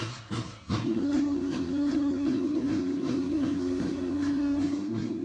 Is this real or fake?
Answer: fake